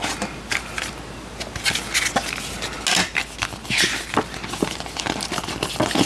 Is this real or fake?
real